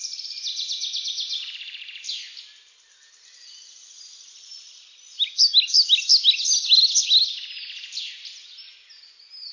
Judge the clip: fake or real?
real